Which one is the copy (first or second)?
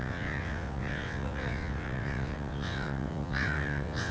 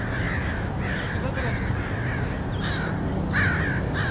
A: first